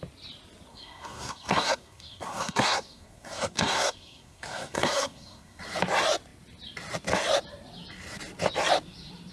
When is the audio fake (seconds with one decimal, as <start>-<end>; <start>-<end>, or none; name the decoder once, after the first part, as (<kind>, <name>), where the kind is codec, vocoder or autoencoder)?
0.7-5.6 (codec, SNAC)